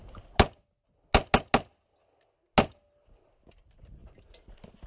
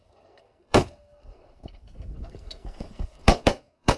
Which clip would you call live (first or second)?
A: first